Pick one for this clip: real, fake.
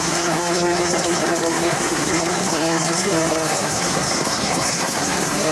fake